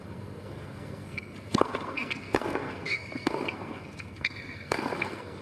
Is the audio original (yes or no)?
no